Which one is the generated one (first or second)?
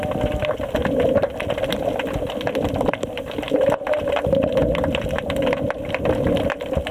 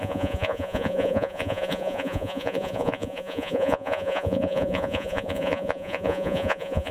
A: second